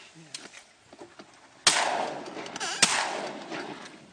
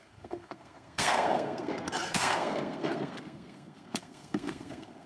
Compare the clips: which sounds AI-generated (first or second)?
second